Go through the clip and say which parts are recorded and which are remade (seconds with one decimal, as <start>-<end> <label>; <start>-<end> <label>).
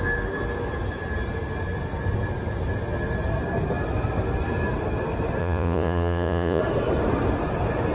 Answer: 0.0-5.4 recorded; 5.4-6.6 remade; 6.6-7.9 recorded